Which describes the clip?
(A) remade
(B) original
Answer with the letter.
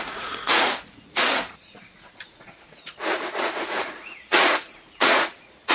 A